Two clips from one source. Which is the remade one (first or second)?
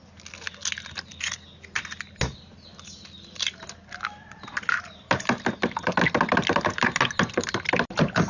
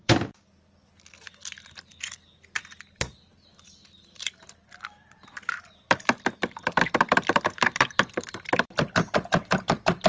second